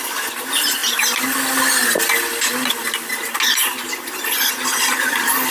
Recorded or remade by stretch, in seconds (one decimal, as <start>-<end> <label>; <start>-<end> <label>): 0.0-5.5 recorded